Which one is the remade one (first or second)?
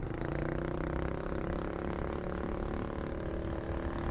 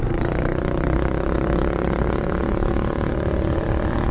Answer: second